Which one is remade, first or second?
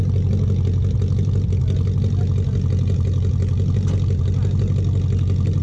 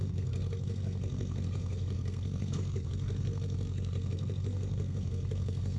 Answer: second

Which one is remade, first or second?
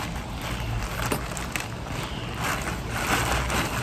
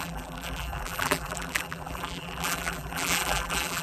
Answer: second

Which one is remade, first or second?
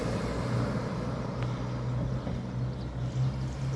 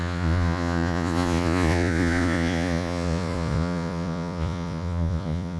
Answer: second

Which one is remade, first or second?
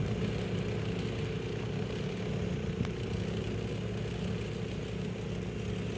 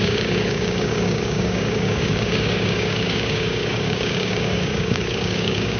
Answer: second